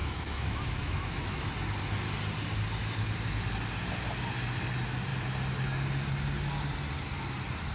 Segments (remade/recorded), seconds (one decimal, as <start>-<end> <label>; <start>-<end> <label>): 0.0-1.4 remade; 1.4-7.7 recorded